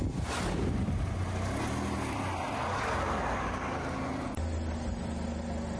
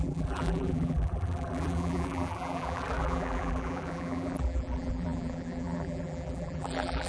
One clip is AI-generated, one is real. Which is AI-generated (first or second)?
second